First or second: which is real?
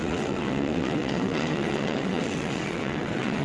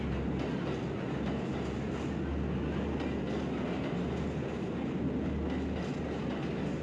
second